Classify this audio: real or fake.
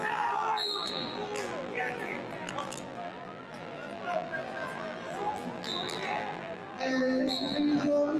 fake